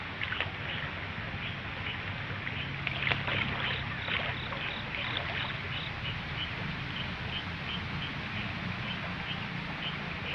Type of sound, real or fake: real